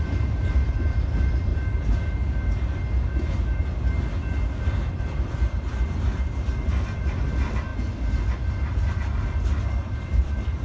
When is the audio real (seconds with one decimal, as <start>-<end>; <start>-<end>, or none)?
1.5-5.0; 7.7-9.9